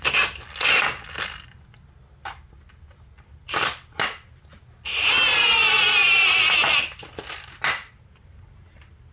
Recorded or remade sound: recorded